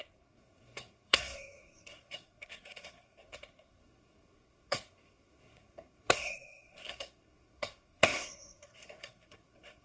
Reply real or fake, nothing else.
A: fake